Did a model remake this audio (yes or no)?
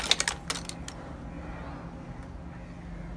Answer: no